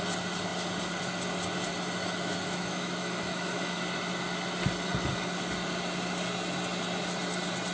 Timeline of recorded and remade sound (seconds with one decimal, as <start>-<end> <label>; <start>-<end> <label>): 0.0-2.0 recorded; 2.0-3.8 remade; 3.8-7.7 recorded